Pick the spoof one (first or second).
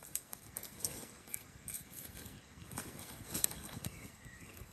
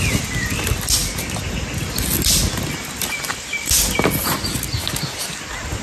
first